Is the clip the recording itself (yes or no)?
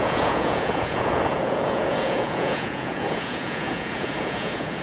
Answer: no